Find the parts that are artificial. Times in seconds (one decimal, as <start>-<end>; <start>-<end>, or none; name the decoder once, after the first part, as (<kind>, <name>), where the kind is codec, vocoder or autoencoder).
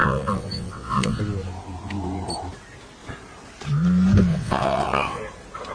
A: 0.0-1.2 (vocoder, WaveNeXt); 4.3-5.2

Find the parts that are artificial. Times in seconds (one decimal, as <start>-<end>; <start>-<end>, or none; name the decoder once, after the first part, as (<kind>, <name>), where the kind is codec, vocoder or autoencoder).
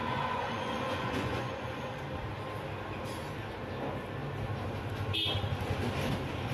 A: 0.0-2.0 (vocoder, Vocos)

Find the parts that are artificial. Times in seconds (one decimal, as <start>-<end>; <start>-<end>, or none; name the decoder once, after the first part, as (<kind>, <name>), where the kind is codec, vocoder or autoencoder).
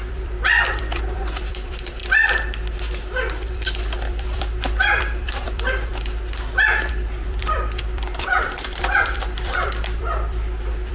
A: 0.0-2.0 (vocoder, BigVGAN v2); 3.5-5.9; 6.9-10.9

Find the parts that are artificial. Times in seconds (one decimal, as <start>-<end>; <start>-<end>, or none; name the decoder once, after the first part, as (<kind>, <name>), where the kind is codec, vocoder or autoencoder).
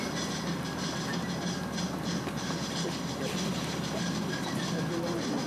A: none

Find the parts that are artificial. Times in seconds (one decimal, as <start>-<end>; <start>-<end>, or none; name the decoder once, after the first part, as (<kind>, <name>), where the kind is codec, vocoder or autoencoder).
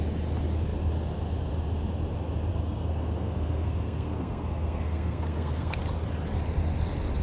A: 2.5-5.8 (codec, SNAC)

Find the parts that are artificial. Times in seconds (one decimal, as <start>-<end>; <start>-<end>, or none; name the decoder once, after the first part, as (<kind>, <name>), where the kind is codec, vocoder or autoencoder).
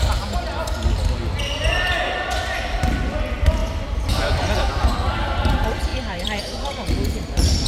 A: 3.6-4.9 (vocoder, BigVGAN v2); 5.9-6.4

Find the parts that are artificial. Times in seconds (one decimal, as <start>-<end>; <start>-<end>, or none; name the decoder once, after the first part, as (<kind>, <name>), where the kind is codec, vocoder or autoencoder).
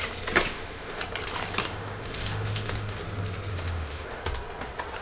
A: 0.5-1.0 (autoencoder, DAC-VAE); 1.6-3.0; 3.5-4.2